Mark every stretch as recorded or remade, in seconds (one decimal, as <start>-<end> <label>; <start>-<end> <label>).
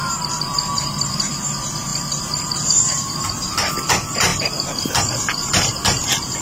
0.0-6.4 remade